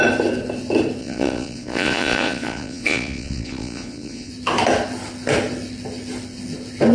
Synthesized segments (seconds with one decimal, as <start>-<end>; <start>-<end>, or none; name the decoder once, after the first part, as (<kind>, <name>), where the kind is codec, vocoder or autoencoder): 1.0-4.3 (vocoder, Vocos)